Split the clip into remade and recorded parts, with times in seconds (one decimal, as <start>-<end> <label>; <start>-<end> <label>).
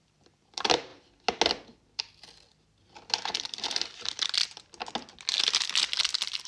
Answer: 0.0-0.9 remade; 0.9-3.4 recorded; 3.4-4.4 remade; 4.4-6.5 recorded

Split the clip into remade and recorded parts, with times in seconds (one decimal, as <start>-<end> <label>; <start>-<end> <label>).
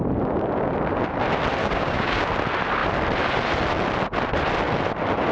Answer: 0.0-1.6 recorded; 1.6-2.3 remade; 2.3-5.3 recorded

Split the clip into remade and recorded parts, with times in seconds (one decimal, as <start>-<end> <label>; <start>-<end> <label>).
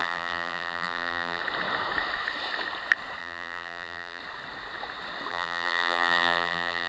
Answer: 0.0-1.4 remade; 1.4-3.2 recorded; 3.2-4.2 remade; 4.2-5.3 recorded; 5.3-6.9 remade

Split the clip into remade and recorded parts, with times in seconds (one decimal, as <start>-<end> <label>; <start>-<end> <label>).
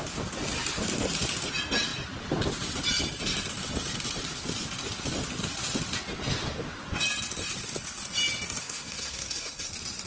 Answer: 0.0-8.6 recorded; 8.6-9.7 remade; 9.7-10.1 recorded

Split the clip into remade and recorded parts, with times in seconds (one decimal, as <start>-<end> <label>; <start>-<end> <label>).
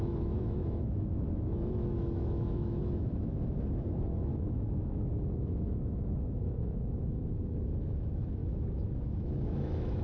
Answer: 0.0-10.0 remade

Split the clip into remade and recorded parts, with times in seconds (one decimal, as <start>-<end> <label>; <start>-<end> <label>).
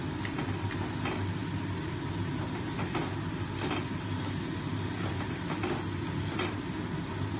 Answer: 0.0-7.4 recorded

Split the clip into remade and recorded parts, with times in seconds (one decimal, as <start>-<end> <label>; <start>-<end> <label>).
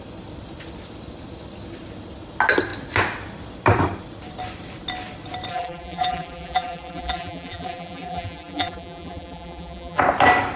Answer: 0.0-5.5 recorded; 5.5-10.0 remade; 10.0-10.6 recorded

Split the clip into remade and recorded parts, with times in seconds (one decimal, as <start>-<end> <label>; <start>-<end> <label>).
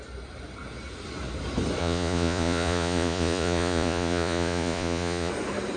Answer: 0.0-1.8 recorded; 1.8-5.3 remade; 5.3-5.8 recorded